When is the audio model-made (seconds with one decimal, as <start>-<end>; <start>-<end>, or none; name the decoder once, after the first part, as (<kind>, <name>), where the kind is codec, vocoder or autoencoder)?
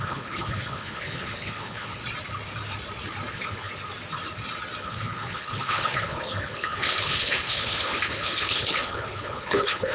0.0-2.0 (codec, HILCodec); 3.3-3.7; 4.8-9.9